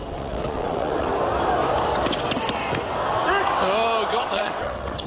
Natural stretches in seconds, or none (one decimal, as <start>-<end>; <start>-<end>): 1.1-4.2